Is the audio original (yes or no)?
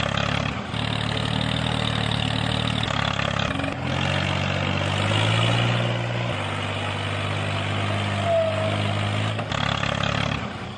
yes